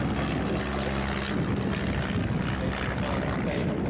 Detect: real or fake real